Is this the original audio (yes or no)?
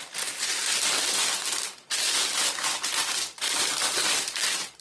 yes